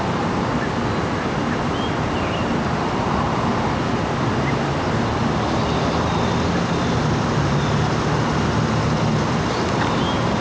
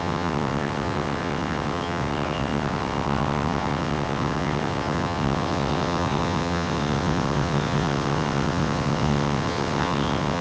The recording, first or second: first